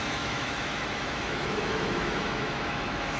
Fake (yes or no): yes